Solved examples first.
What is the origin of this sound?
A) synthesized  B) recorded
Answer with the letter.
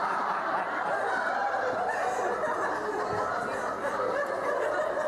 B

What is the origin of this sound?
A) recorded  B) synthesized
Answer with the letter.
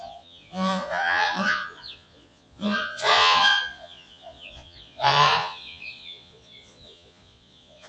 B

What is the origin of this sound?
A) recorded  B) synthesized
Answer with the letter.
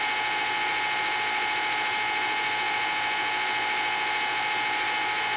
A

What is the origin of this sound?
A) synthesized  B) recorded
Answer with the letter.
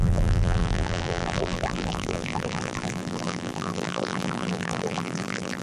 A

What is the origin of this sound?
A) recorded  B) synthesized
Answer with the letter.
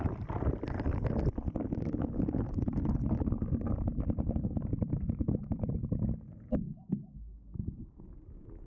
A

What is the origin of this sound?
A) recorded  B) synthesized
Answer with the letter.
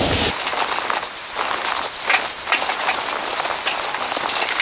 A